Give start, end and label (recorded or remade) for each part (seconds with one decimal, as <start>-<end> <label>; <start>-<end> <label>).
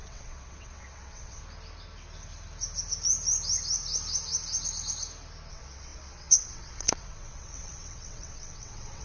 0.0-1.4 remade; 1.4-5.5 recorded; 5.5-9.0 remade